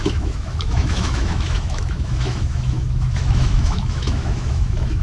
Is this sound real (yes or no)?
no